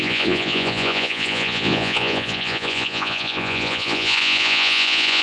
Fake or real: fake